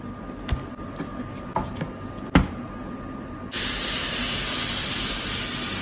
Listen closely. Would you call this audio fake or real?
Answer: real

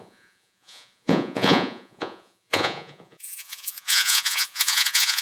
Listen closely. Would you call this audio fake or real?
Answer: fake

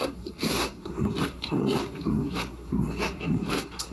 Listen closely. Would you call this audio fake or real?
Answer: fake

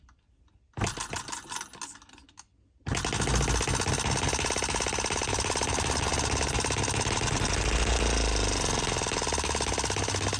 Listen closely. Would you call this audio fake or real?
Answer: real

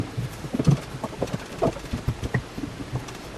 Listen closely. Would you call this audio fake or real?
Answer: fake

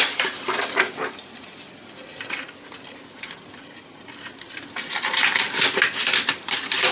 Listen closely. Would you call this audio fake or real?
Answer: real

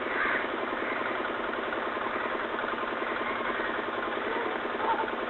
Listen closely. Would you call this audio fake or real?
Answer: real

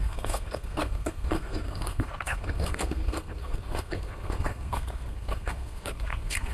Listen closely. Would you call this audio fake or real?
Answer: fake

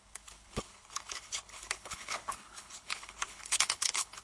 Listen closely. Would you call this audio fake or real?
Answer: fake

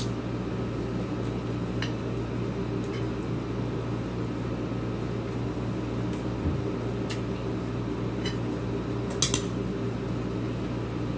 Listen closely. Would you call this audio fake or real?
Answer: real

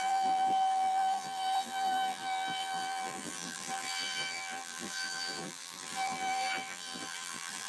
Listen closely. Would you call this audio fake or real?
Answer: fake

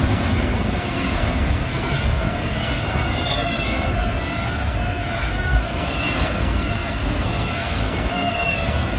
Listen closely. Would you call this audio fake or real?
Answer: fake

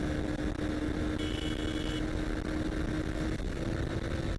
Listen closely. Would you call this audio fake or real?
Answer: real